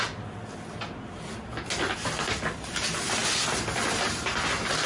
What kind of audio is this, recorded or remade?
recorded